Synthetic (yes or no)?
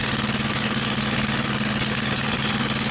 no